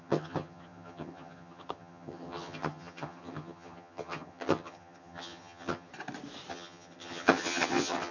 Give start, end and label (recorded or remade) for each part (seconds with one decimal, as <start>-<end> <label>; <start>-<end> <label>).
0.0-5.9 remade; 5.9-6.5 recorded; 6.5-8.1 remade

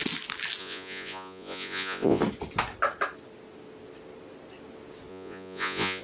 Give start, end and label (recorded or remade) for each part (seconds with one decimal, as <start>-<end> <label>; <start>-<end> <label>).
0.0-0.6 recorded; 0.6-2.2 remade; 2.2-5.1 recorded; 5.1-6.0 remade

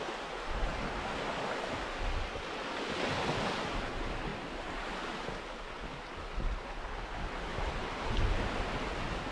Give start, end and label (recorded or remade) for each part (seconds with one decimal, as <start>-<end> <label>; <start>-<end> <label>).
0.0-4.3 recorded; 4.3-4.9 remade; 4.9-7.5 recorded; 7.5-8.4 remade; 8.4-9.3 recorded

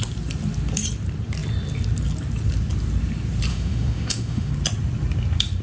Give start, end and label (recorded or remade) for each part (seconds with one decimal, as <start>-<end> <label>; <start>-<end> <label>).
0.0-3.5 recorded; 3.5-4.5 remade; 4.5-5.6 recorded